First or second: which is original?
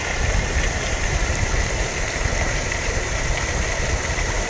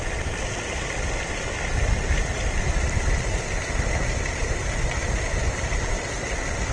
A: second